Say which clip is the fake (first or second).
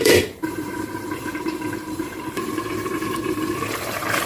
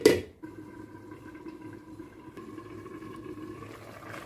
first